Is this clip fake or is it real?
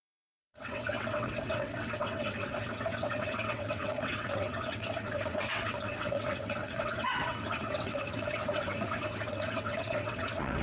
fake